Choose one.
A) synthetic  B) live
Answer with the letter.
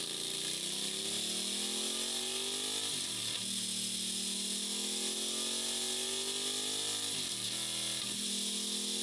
B